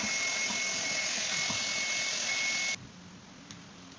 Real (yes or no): yes